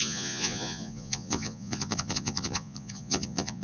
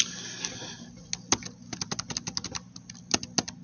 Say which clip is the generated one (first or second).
first